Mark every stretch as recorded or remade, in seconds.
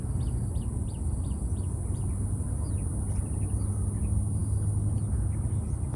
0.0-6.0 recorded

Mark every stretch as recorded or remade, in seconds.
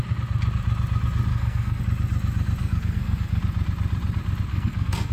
0.0-1.3 recorded; 1.3-1.8 remade; 1.8-2.6 recorded; 2.6-3.4 remade; 3.4-4.5 recorded; 4.5-5.1 remade